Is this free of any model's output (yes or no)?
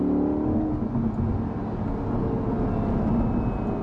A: yes